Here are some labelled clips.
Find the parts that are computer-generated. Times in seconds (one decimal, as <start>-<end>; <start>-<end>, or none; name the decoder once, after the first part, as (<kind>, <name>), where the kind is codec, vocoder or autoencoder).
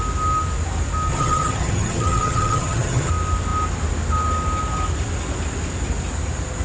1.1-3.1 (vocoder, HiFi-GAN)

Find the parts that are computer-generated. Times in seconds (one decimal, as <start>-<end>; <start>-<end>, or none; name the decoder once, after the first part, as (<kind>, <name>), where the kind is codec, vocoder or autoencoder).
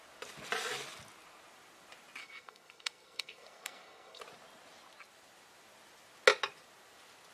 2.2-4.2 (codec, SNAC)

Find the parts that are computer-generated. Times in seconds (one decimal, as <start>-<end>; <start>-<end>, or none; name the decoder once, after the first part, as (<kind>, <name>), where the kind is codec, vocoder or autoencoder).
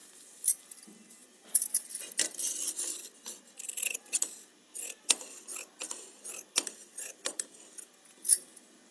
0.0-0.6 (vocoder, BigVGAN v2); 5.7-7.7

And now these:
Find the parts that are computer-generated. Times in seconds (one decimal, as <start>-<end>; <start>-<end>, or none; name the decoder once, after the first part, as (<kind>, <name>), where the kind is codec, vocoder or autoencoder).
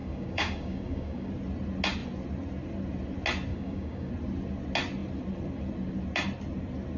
0.0-1.3 (codec, DAC); 3.5-4.1